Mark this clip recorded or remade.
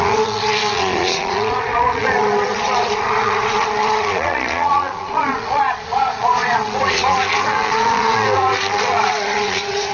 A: remade